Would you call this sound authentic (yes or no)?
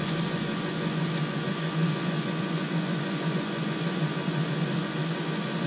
no